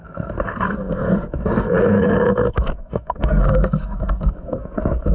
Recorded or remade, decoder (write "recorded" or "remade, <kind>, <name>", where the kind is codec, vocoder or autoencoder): remade, codec, SNAC